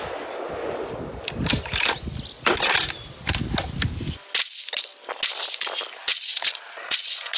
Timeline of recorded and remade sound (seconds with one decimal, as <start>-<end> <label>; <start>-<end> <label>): 0.0-6.1 recorded; 6.1-7.4 remade